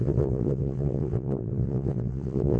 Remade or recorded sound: remade